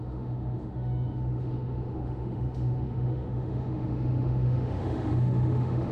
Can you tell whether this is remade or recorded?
remade